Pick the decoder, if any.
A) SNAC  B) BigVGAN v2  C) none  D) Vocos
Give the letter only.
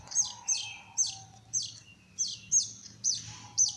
B